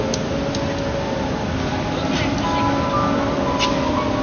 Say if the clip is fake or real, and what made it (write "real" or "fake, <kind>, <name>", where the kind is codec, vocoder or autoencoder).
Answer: real